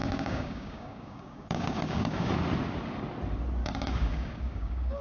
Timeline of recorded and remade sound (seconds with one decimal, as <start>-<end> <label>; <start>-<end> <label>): 0.0-2.3 remade; 2.3-3.6 recorded; 3.6-5.0 remade